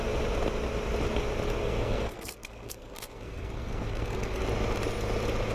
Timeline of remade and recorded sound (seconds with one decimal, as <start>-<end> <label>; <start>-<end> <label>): 0.0-1.6 recorded; 1.6-4.4 remade; 4.4-5.5 recorded